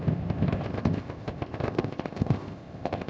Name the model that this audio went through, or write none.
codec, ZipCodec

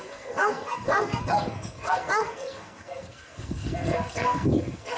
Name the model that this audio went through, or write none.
codec, SNAC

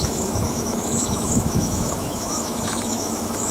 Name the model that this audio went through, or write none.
autoencoder, DAC-VAE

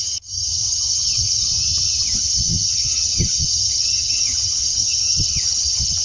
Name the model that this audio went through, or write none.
vocoder, HiFi-GAN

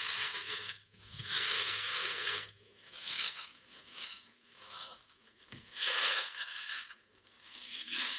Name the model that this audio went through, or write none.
codec, SNAC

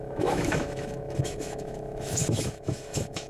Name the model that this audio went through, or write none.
autoencoder, DAC-VAE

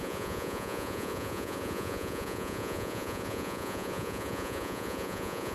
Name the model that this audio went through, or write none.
vocoder, Vocos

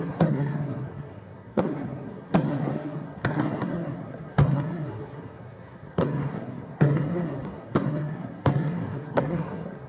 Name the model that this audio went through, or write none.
codec, SNAC